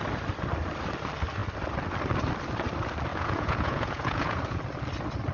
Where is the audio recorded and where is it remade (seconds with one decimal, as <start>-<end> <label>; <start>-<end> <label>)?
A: 0.0-3.1 recorded; 3.1-4.6 remade; 4.6-5.3 recorded